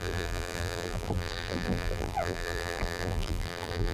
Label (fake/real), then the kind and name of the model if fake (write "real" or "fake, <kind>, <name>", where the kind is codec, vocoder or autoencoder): fake, vocoder, BigVGAN v2